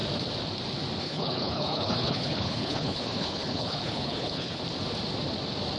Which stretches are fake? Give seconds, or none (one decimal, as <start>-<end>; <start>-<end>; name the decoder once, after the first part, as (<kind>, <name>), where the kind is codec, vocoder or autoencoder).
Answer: 1.0-4.6 (codec, HILCodec)